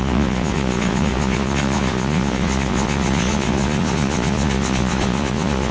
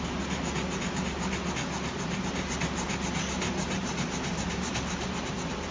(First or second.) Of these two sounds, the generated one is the first